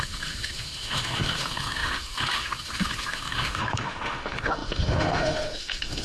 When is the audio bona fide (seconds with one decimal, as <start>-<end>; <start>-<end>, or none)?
none